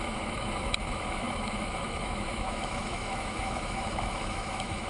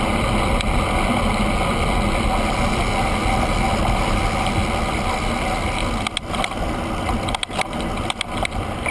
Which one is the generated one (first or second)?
first